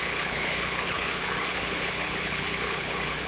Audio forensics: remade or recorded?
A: remade